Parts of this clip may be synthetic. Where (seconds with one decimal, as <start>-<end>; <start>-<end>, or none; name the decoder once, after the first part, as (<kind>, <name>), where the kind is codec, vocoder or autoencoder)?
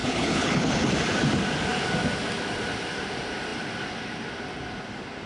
0.0-0.9 (codec, HILCodec)